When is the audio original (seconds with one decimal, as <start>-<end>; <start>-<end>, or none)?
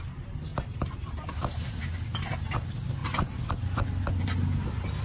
0.0-5.0